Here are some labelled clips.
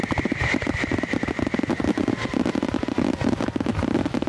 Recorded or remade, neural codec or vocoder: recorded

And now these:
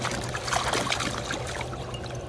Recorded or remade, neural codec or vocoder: recorded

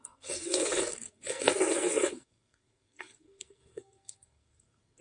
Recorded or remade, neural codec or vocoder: remade, codec, SNAC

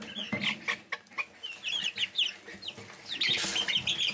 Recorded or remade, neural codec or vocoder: recorded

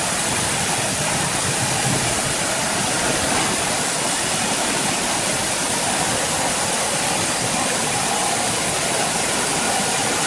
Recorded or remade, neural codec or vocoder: remade, vocoder, BigVGAN v2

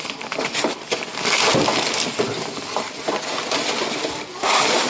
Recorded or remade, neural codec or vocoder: recorded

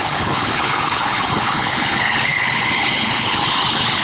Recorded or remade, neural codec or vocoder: remade, codec, HILCodec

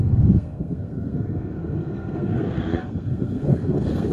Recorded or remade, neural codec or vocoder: remade, codec, SNAC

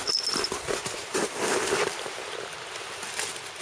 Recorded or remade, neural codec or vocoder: recorded